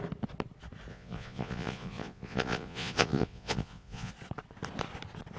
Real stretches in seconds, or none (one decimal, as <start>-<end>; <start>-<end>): 0.0-0.9; 4.1-5.4